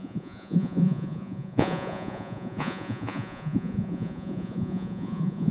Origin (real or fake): fake